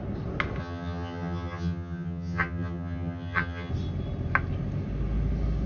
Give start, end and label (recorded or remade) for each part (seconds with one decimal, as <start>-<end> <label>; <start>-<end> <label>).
0.0-0.6 recorded; 0.6-3.7 remade; 3.7-5.7 recorded